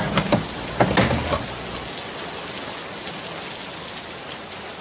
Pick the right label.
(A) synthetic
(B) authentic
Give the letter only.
B